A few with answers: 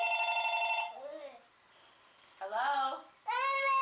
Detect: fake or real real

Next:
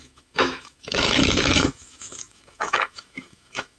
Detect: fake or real fake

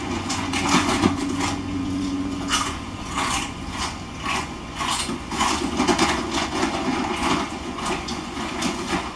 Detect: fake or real fake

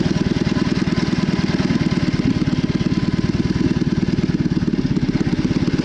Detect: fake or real real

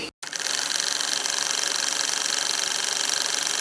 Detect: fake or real real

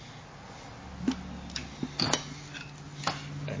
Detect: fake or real real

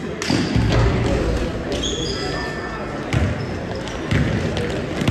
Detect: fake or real real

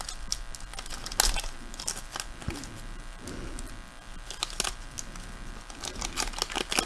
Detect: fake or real real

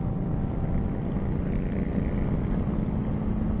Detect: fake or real real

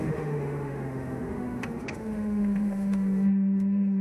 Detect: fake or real fake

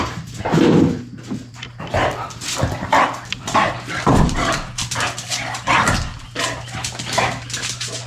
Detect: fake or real fake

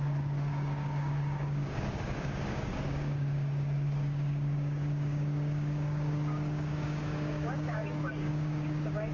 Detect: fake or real fake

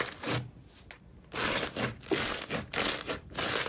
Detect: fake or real real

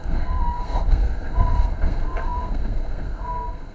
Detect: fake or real fake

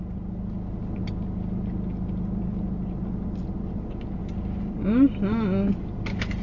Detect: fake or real real